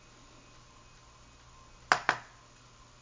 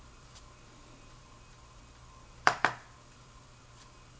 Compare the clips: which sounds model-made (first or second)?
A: second